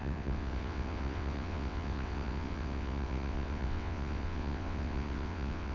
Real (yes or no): no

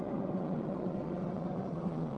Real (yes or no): no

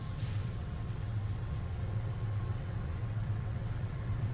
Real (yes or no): no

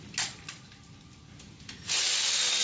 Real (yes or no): yes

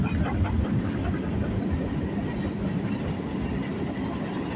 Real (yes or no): yes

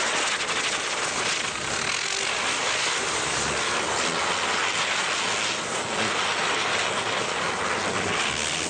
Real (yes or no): yes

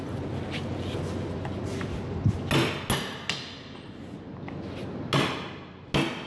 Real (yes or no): yes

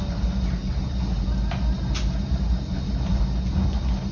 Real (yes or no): yes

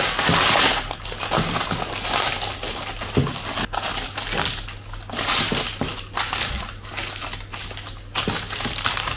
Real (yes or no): yes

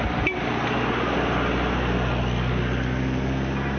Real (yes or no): yes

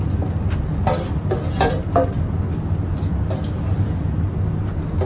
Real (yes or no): yes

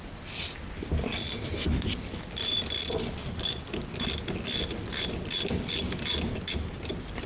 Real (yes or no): yes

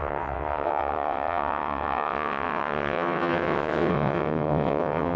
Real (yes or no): no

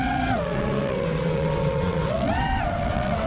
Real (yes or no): no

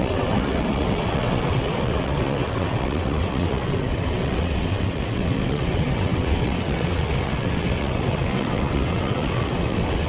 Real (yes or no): no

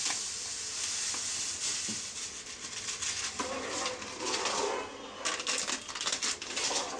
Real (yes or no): yes